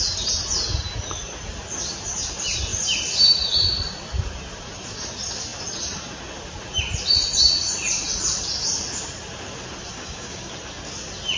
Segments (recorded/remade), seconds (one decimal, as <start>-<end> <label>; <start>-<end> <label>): 0.0-9.9 recorded; 9.9-10.5 remade; 10.5-11.4 recorded